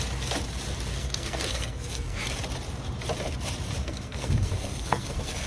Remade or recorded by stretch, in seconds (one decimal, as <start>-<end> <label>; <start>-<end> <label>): 0.0-0.9 recorded; 0.9-2.2 remade; 2.2-3.8 recorded; 3.8-5.5 remade